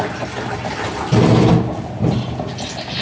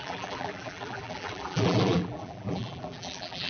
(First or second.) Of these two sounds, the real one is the first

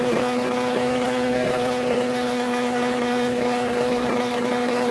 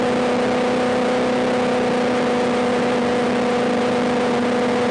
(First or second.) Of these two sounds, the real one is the second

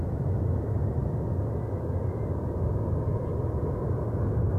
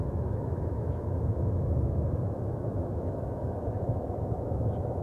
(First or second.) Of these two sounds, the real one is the first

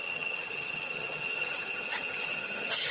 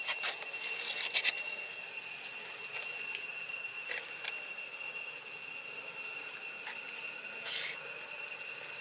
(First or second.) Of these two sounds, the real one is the second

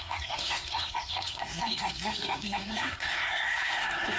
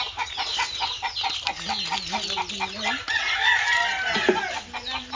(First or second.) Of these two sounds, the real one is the second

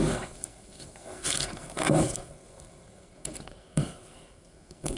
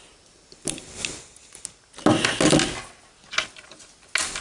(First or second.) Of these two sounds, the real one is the second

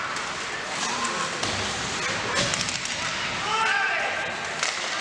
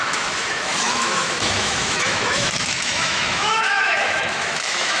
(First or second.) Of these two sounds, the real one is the first